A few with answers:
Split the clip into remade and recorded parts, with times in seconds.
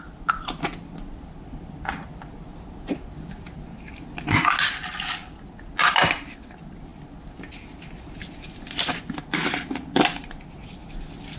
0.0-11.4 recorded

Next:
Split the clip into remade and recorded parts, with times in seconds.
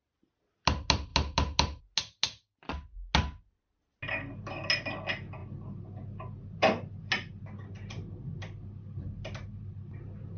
0.0-10.4 recorded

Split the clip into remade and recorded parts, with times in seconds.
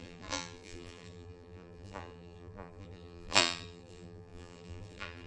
0.0-5.3 remade